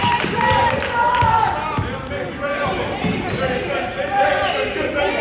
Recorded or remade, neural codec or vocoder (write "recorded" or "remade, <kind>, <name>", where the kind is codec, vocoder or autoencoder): recorded